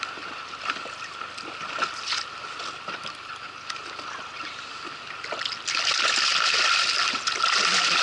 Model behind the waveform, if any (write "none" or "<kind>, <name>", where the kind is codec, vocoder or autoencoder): none